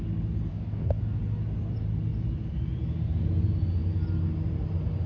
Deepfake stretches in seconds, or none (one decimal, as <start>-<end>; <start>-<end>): 0.5-1.0